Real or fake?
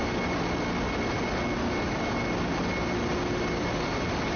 real